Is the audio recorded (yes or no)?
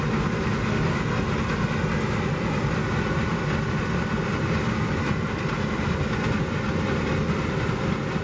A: yes